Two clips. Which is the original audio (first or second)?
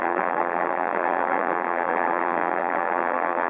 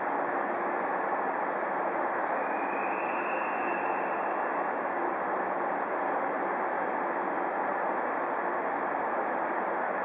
second